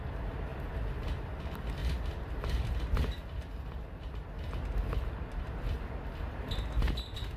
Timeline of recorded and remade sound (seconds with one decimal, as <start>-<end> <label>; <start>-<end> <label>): 0.0-7.4 recorded